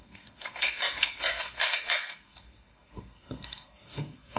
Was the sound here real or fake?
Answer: fake